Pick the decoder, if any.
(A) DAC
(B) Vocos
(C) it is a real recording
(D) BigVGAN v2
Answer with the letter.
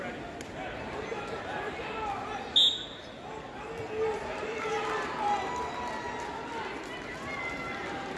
C